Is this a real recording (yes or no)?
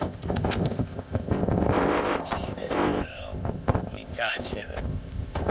no